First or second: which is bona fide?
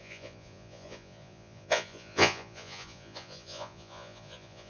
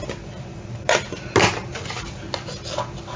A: second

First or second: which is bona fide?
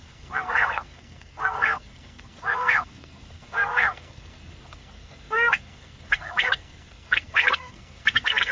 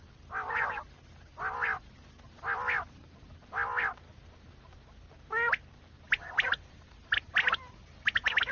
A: second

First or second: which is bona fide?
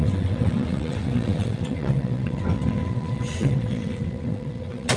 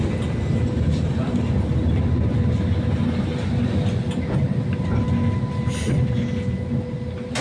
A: second